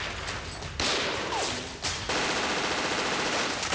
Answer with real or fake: real